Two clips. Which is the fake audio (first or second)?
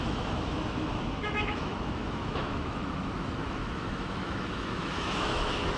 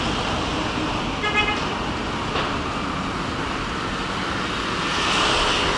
first